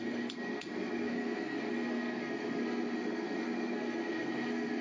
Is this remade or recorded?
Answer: remade